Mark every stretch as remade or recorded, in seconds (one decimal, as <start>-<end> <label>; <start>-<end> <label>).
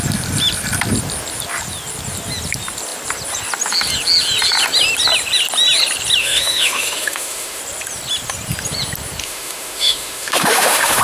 0.0-6.2 recorded; 6.2-7.6 remade; 7.6-9.2 recorded; 9.2-11.0 remade